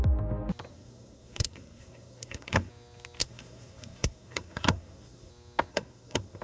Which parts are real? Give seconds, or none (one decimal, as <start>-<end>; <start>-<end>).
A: 0.0-0.7; 2.7-3.2; 5.3-5.7